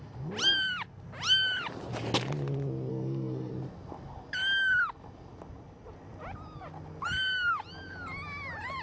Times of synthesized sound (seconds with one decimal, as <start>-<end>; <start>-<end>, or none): 2.9-3.5